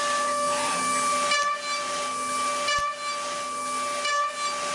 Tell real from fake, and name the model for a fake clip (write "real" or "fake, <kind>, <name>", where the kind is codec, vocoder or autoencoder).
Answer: real